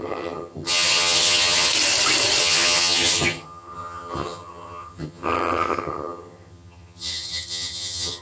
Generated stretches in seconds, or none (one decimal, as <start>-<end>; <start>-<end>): 0.0-1.7; 2.4-8.2